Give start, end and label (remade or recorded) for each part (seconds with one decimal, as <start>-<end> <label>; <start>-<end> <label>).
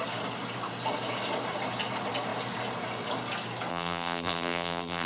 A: 0.0-3.7 recorded; 3.7-5.1 remade